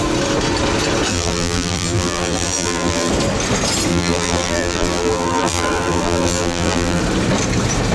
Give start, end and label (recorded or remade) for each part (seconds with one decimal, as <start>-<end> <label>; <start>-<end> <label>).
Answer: 0.0-1.1 recorded; 1.1-3.1 remade; 3.1-3.9 recorded; 3.9-7.0 remade; 7.0-7.9 recorded